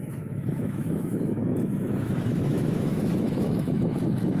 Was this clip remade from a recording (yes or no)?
yes